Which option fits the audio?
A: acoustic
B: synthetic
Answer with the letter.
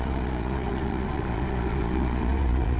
B